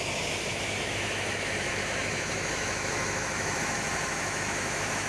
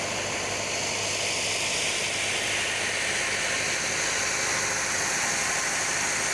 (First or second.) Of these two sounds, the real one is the second